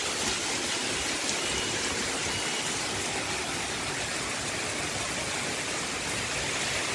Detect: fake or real real